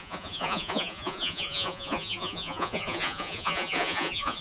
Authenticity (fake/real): fake